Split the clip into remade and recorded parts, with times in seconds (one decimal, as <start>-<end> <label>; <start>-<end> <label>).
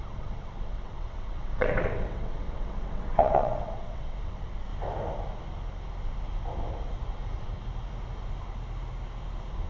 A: 0.0-4.7 remade; 4.7-9.7 recorded